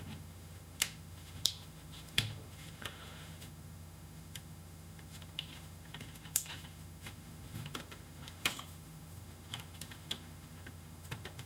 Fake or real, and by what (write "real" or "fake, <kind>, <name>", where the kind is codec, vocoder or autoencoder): fake, autoencoder, DAC-VAE